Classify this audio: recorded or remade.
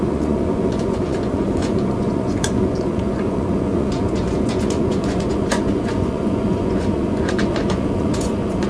remade